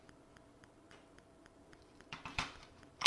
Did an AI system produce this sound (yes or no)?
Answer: yes